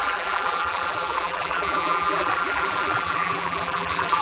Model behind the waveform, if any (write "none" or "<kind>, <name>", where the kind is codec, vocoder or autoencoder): vocoder, BigVGAN v2